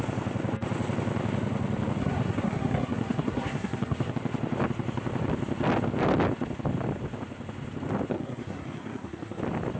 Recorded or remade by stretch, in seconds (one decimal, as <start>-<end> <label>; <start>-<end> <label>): 0.0-2.0 recorded; 2.0-4.1 remade; 4.1-8.1 recorded; 8.1-9.4 remade; 9.4-9.8 recorded